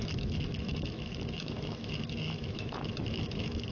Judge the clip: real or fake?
fake